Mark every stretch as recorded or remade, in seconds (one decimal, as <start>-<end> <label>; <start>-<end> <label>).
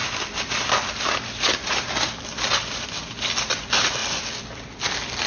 0.0-3.2 remade; 3.2-4.0 recorded; 4.0-4.6 remade; 4.6-5.3 recorded